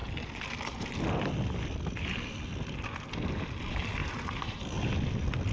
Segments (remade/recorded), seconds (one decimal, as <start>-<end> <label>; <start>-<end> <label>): 0.0-4.0 recorded; 4.0-4.6 remade; 4.6-5.5 recorded